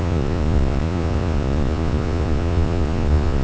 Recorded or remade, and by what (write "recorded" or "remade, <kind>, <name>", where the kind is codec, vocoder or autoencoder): remade, vocoder, Vocos